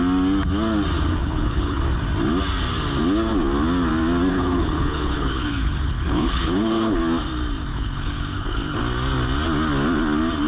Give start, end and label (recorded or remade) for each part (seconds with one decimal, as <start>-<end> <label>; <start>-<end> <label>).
0.0-1.2 recorded; 1.2-1.8 remade; 1.8-4.3 recorded; 4.3-7.0 remade; 7.0-7.7 recorded; 7.7-8.8 remade; 8.8-10.5 recorded